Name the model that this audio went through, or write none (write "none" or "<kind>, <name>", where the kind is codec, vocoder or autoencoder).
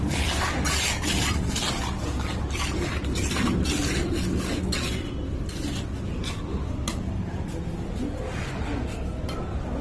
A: none